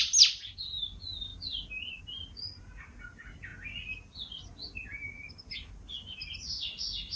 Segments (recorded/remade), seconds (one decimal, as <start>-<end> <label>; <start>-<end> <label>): 0.0-7.2 recorded